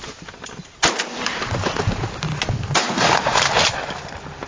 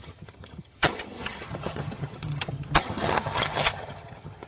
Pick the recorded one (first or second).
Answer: first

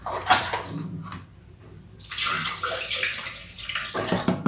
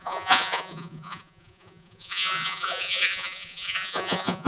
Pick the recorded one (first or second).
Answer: first